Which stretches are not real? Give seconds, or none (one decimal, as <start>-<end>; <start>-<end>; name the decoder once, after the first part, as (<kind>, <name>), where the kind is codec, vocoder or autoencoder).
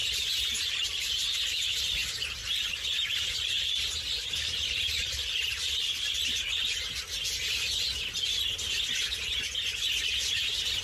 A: 0.0-2.0 (vocoder, BigVGAN v2); 2.7-6.5; 10.4-10.8